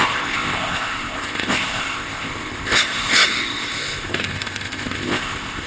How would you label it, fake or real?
fake